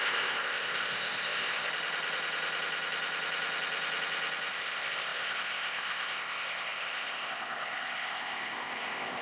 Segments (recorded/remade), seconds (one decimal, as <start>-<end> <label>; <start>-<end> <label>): 0.0-1.7 remade; 1.7-4.5 recorded; 4.5-9.2 remade